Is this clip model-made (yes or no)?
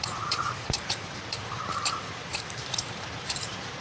yes